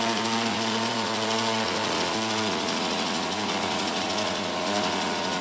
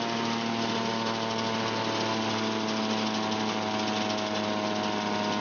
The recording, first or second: second